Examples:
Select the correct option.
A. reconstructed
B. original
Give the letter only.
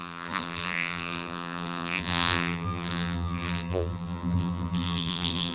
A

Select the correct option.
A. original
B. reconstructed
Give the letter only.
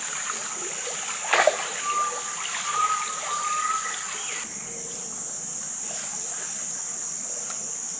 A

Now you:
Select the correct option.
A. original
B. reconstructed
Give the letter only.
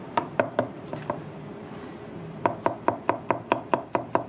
B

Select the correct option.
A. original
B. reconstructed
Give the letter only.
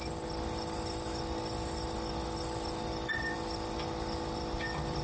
B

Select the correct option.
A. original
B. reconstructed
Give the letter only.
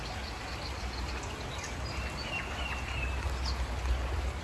A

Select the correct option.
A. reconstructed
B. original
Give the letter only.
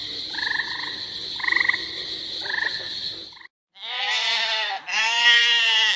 A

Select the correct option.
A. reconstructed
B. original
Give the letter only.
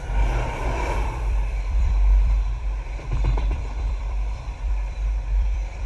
A